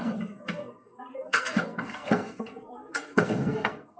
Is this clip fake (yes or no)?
yes